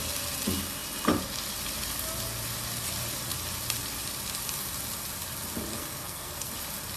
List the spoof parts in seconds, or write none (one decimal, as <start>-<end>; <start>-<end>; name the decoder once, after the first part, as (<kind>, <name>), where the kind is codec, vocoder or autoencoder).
5.7-6.5 (codec, SNAC)